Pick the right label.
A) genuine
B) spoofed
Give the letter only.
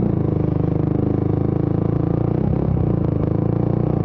A